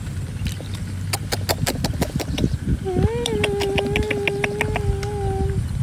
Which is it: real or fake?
real